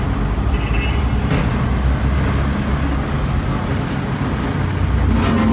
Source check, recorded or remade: recorded